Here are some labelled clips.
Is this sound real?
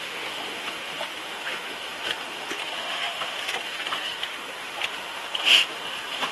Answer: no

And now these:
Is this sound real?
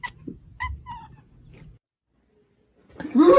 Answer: yes